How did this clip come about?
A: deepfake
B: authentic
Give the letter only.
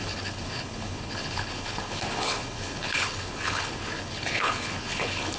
A